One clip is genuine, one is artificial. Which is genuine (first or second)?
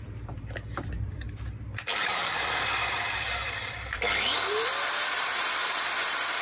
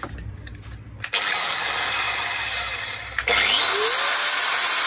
second